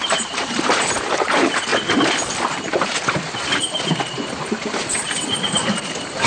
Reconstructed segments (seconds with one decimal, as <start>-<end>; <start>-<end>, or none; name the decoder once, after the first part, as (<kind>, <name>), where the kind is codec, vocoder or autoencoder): 0.0-1.7 (vocoder, BigVGAN v2); 2.6-6.3